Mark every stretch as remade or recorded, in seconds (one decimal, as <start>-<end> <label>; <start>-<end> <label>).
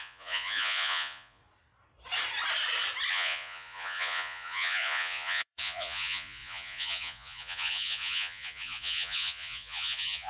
0.0-1.4 remade; 1.4-3.1 recorded; 3.1-10.3 remade